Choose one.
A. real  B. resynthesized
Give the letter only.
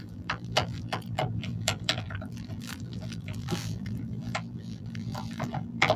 B